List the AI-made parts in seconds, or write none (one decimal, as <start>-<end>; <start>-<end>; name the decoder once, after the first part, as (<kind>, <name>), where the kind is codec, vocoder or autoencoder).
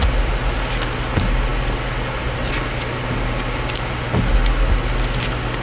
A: none